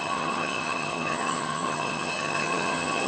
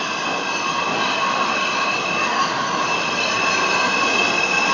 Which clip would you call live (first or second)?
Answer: second